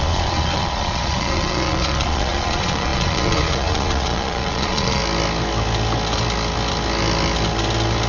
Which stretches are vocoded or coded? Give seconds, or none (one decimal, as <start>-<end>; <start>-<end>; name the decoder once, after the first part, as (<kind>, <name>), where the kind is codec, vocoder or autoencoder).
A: 0.0-5.0 (vocoder, Vocos)